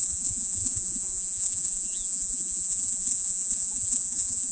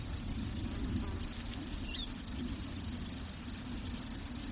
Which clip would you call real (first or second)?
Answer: second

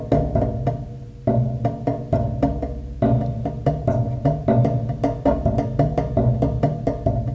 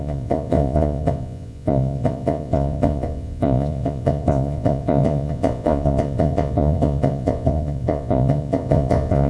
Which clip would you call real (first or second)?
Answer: first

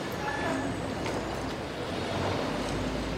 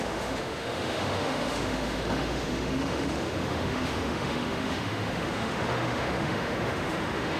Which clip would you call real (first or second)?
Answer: first